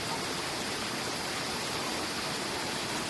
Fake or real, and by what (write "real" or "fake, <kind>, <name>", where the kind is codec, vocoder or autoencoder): real